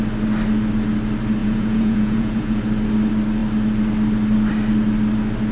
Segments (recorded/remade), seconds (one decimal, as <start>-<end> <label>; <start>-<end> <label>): 0.0-1.4 recorded; 1.4-2.6 remade; 2.6-5.5 recorded